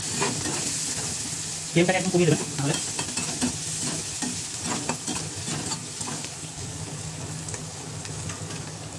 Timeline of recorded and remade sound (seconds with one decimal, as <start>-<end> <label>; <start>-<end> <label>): 0.0-5.8 recorded; 5.8-9.0 remade